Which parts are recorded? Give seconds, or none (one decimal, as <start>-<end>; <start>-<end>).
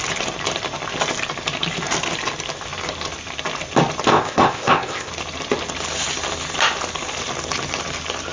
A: 0.0-4.1; 5.1-8.3